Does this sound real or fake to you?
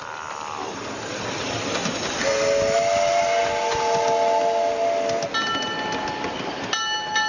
real